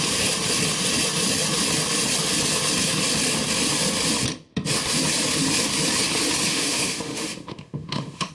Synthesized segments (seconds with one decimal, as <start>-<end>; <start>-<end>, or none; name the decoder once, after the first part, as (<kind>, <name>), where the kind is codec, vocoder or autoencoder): 6.5-8.3 (autoencoder, DAC-VAE)